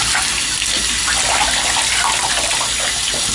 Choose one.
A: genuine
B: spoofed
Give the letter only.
A